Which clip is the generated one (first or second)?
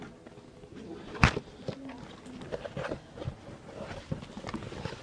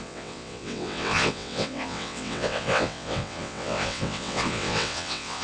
second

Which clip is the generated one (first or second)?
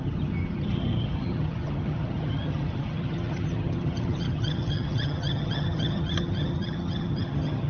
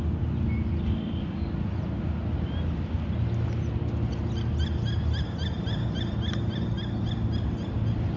first